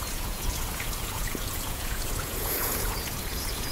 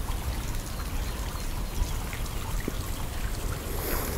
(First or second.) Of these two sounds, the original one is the second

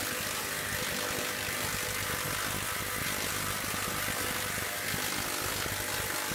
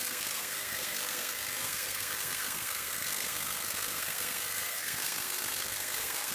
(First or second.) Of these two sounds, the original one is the first